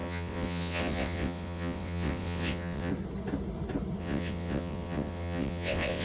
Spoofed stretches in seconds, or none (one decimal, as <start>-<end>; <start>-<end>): 0.0-2.9; 4.0-6.0